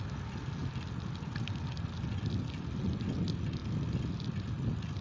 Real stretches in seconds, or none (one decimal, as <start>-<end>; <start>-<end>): 0.0-5.0